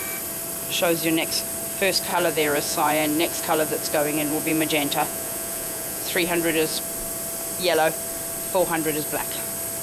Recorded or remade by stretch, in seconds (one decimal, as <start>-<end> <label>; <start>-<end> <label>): 0.0-2.1 recorded; 2.1-6.8 remade; 6.8-9.8 recorded